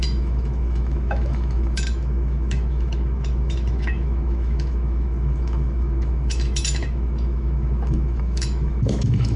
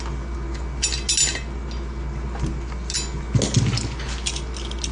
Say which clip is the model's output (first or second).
first